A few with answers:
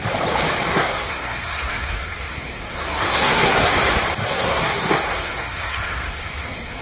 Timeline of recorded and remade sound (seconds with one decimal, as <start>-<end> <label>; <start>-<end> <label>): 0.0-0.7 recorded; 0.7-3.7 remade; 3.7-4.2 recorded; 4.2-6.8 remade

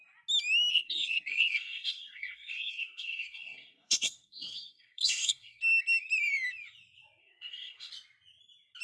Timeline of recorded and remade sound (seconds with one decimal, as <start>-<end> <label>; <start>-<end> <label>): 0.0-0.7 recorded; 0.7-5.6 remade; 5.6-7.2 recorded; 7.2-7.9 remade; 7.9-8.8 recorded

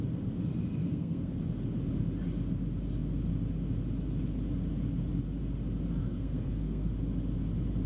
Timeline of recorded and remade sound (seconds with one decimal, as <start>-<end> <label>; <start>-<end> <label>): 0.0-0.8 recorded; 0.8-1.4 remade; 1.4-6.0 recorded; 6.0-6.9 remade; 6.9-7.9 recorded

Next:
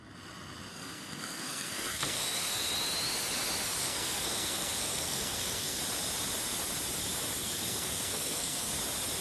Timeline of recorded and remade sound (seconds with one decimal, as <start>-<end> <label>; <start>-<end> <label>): 0.0-0.7 recorded; 0.7-2.7 remade; 2.7-3.8 recorded; 3.8-5.8 remade; 5.8-7.4 recorded; 7.4-8.7 remade; 8.7-9.2 recorded

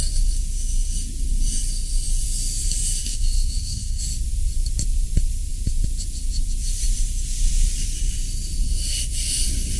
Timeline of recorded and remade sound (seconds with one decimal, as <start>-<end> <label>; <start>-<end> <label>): 0.0-3.1 recorded; 3.1-4.0 remade; 4.0-9.8 recorded

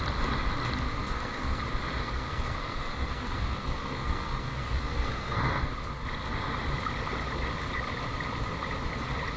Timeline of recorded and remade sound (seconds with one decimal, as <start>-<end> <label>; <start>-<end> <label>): 0.0-1.0 recorded; 1.0-1.6 remade; 1.6-2.0 recorded; 2.0-5.7 remade; 5.7-9.4 recorded